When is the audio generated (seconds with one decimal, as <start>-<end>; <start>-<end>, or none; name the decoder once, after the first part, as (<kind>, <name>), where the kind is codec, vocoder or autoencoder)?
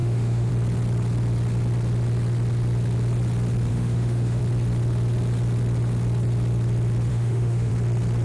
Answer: 0.0-0.5 (autoencoder, DAC-VAE); 3.7-4.4; 7.1-7.7